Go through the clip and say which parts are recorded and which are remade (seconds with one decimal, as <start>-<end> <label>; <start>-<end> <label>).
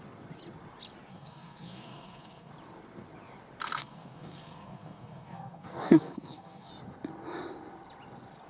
0.0-1.1 recorded; 1.1-2.5 remade; 2.5-3.8 recorded; 3.8-6.7 remade; 6.7-8.5 recorded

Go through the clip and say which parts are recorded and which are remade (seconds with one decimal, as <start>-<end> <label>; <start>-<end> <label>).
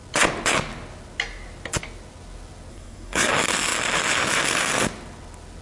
0.0-2.7 recorded; 2.7-3.3 remade; 3.3-5.6 recorded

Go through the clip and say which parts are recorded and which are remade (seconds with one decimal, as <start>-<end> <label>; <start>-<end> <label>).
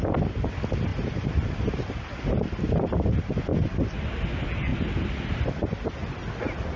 0.0-6.8 recorded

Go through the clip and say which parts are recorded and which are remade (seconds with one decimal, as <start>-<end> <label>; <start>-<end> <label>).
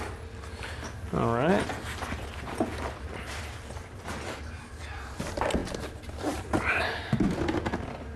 0.0-8.2 recorded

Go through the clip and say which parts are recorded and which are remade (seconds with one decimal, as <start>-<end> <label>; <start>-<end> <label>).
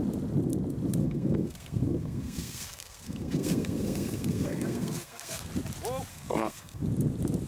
0.0-1.0 recorded; 1.0-5.5 remade; 5.5-6.1 recorded; 6.1-6.8 remade; 6.8-7.5 recorded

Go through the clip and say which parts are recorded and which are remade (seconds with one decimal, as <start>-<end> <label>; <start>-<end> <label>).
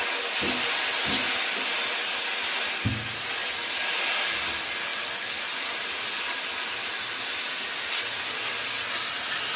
0.0-9.6 recorded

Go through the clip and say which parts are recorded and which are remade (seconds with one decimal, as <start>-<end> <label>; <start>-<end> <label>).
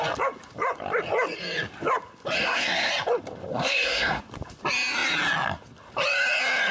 0.0-2.4 recorded; 2.4-2.9 remade; 2.9-3.5 recorded; 3.5-4.2 remade; 4.2-6.7 recorded